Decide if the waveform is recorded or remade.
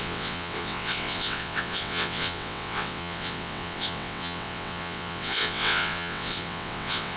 remade